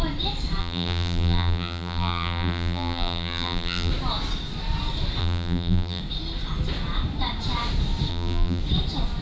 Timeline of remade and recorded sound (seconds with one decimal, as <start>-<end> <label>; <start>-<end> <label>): 0.0-0.6 recorded; 0.6-3.9 remade; 3.9-5.2 recorded; 5.2-6.0 remade; 6.0-8.1 recorded; 8.1-8.6 remade; 8.6-9.2 recorded